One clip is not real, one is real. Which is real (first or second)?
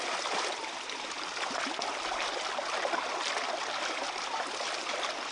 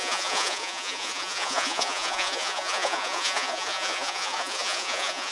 first